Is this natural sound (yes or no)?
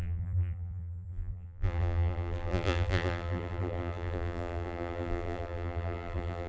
no